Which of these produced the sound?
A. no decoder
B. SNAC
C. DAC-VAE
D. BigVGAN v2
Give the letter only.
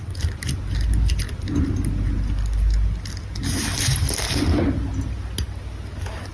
A